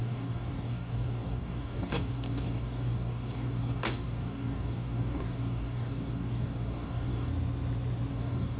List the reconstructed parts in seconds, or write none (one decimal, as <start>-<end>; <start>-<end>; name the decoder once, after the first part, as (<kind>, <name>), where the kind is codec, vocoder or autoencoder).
0.0-7.3 (codec, DAC); 8.1-8.6